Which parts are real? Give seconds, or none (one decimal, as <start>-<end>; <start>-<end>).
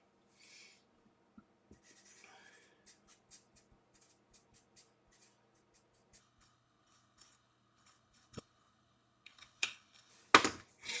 0.0-6.2; 10.1-11.0